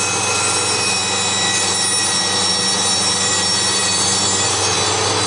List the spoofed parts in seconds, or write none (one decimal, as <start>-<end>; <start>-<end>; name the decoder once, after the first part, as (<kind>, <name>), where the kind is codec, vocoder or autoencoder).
none